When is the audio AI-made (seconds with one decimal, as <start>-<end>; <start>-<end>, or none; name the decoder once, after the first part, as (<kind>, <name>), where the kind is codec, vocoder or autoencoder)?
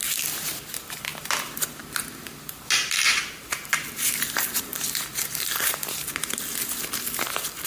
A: none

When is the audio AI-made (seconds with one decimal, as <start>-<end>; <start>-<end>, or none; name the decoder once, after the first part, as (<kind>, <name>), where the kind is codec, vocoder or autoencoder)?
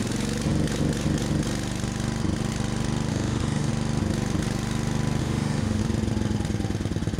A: 3.1-3.7 (autoencoder, DAC-VAE); 5.2-5.8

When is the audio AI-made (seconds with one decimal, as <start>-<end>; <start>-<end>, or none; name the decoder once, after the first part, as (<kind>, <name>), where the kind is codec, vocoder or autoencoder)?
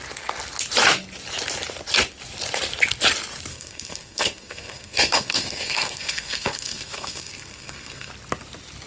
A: 3.5-8.1 (codec, SNAC)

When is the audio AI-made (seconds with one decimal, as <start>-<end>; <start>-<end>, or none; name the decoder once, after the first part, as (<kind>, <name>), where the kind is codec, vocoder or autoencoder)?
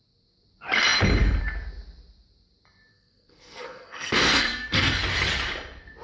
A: 2.9-5.0 (codec, SNAC)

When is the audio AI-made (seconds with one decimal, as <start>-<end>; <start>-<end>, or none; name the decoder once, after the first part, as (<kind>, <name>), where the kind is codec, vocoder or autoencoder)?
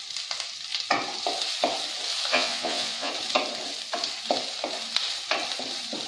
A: 2.3-3.1 (vocoder, Vocos)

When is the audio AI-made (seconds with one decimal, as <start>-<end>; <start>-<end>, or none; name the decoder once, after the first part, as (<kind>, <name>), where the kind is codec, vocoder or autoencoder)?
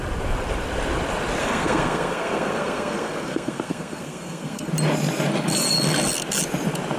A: 1.4-4.7 (codec, SNAC)